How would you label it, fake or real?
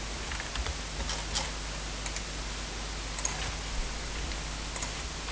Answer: real